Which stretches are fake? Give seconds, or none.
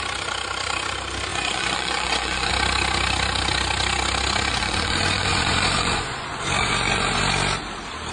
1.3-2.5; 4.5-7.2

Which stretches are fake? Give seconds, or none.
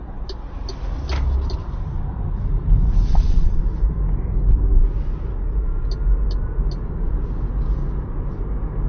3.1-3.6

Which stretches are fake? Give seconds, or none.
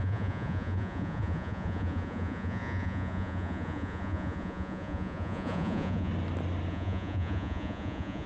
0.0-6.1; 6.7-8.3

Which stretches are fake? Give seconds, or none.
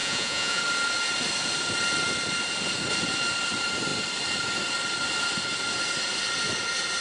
0.0-0.6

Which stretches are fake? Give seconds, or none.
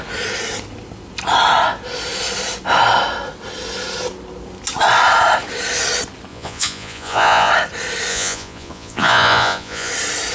6.3-7.5; 8.1-9.9